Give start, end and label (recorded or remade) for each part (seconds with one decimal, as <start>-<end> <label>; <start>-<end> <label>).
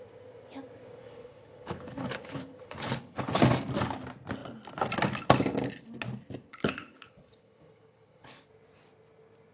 0.0-1.0 recorded; 1.0-3.4 remade; 3.4-6.5 recorded; 6.5-8.5 remade; 8.5-9.5 recorded